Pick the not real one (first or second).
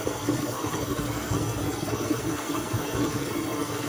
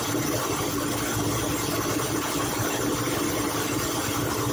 first